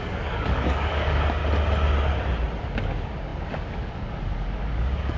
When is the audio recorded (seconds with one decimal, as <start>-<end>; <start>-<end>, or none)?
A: 1.4-2.6